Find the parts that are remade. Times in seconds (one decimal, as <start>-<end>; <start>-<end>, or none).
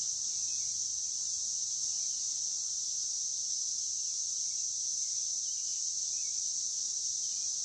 0.0-1.8; 2.6-3.0; 5.0-5.7; 7.1-7.6